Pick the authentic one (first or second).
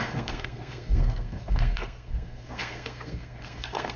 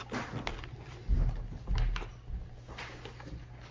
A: second